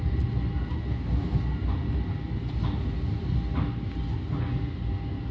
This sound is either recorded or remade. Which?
recorded